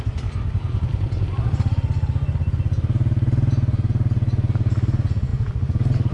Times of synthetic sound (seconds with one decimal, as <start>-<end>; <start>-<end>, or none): none